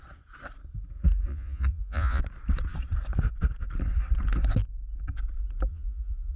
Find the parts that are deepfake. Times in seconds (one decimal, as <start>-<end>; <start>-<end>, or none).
1.3-2.2; 5.7-6.4